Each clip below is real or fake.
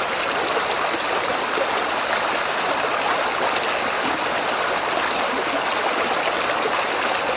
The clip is real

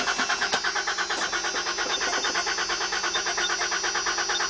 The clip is real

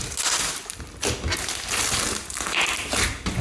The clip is real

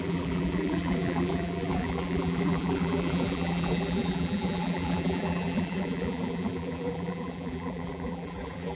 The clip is fake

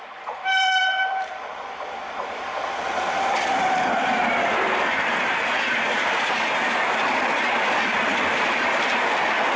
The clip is fake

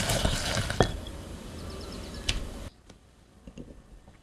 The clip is fake